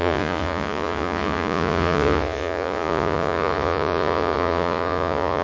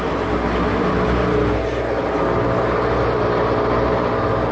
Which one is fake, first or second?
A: first